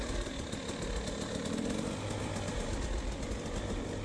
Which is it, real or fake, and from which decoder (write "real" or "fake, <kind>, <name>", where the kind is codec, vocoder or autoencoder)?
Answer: real